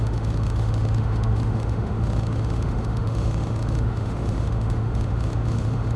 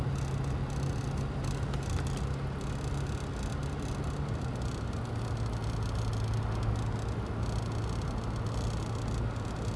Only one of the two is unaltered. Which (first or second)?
second